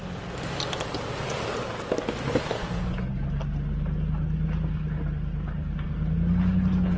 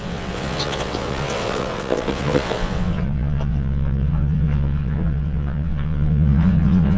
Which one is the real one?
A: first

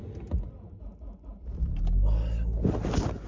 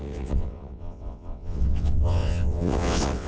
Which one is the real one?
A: first